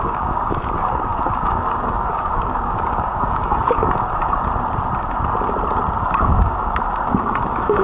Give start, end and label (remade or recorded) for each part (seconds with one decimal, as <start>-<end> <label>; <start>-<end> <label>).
0.0-4.2 remade; 4.2-6.0 recorded; 6.0-7.8 remade